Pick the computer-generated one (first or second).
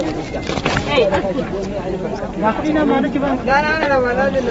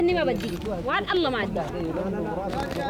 first